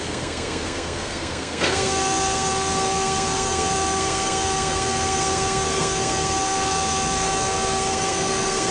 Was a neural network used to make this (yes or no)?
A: yes